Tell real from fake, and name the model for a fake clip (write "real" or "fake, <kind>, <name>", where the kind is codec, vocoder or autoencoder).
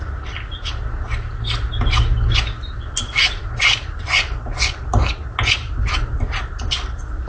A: real